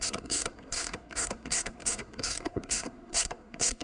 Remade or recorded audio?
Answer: remade